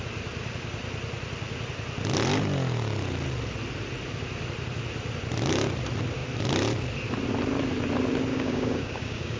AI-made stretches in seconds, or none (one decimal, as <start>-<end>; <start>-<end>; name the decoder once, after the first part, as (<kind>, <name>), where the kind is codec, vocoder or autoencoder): 8.3-9.4 (codec, DAC)